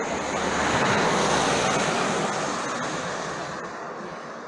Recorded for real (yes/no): yes